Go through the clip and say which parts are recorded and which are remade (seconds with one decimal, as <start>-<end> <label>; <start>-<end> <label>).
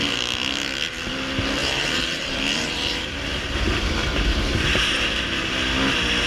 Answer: 0.0-1.6 recorded; 1.6-5.4 remade; 5.4-6.3 recorded